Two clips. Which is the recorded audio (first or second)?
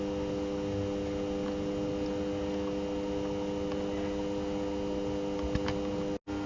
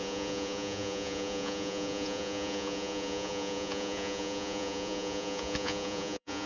first